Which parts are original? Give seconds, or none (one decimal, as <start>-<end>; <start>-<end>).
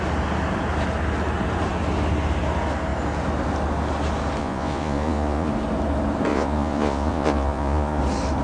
0.0-4.4; 5.5-6.3; 8.0-8.4